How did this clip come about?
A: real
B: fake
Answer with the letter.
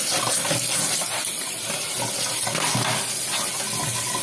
A